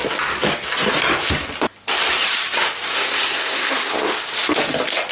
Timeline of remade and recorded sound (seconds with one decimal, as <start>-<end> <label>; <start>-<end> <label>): 0.0-2.9 recorded; 2.9-3.9 remade; 3.9-5.1 recorded